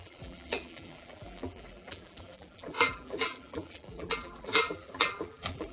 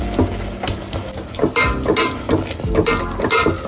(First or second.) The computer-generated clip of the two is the first